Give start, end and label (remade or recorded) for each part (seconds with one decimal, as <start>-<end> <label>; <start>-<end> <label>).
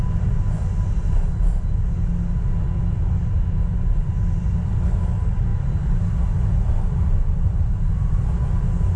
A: 0.0-9.0 recorded